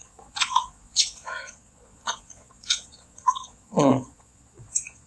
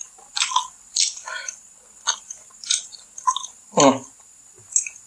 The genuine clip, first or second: second